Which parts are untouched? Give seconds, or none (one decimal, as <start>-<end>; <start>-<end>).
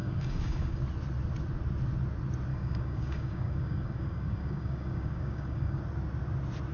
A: 0.8-2.5; 5.8-6.7